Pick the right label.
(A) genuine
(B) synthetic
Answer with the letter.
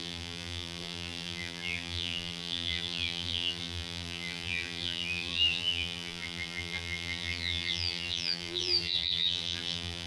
B